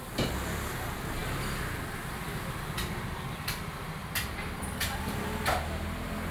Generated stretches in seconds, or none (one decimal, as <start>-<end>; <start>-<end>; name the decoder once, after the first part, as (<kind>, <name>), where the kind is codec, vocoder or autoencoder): none